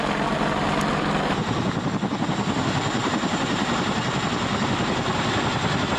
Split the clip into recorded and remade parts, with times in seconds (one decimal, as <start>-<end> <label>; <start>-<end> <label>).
0.0-3.0 recorded; 3.0-4.0 remade; 4.0-6.0 recorded